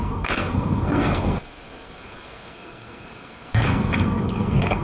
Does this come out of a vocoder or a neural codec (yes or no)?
yes